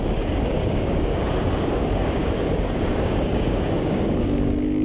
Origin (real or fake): fake